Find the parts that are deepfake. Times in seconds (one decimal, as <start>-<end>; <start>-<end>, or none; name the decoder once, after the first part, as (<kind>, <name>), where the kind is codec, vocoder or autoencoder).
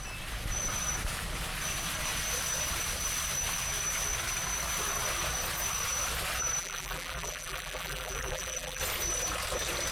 6.6-8.8 (vocoder, BigVGAN v2)